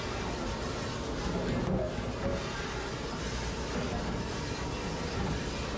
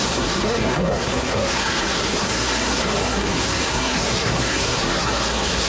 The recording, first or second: first